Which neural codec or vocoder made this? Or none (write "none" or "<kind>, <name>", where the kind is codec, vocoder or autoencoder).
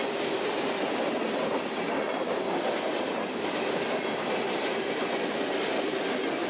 none